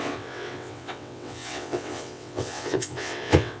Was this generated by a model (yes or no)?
yes